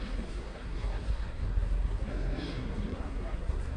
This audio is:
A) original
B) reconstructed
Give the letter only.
B